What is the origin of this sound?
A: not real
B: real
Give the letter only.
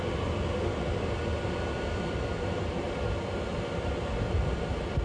B